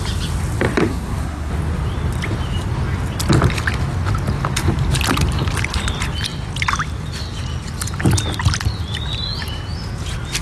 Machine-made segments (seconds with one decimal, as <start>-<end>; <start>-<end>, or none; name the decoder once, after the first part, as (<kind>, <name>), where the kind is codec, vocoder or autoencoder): 0.8-1.5 (codec, SNAC)

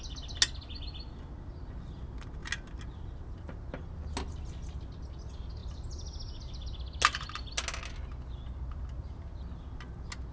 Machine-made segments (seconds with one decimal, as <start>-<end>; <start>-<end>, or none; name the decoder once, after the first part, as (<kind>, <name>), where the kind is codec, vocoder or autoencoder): none

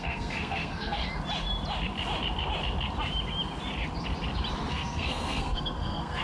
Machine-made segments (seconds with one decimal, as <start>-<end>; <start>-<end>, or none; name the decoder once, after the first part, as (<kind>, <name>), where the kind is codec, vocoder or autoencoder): 0.0-1.0 (codec, SNAC); 4.7-6.2

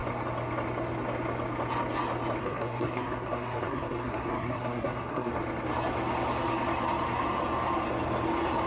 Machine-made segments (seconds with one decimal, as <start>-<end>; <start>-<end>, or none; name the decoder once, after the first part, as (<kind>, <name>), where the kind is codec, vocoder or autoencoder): 2.4-5.3 (codec, SNAC)

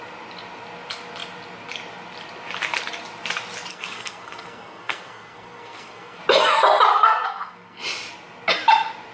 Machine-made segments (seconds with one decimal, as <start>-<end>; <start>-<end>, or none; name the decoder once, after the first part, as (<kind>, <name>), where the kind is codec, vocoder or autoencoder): 3.7-6.2 (codec, SNAC); 6.9-7.8

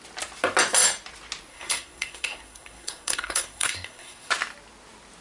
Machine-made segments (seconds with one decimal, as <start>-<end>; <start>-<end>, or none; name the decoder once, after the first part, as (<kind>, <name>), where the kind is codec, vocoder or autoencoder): 1.5-4.3 (codec, SNAC)